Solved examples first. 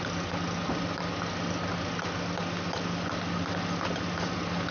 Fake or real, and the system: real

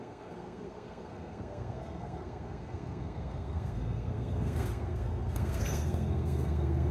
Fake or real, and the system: fake, codec, SNAC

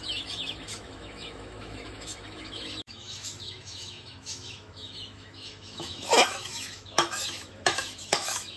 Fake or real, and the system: fake, autoencoder, DAC-VAE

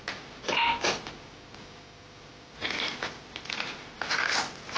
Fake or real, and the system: real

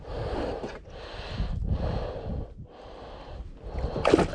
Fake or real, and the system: real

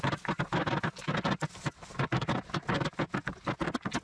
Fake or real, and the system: real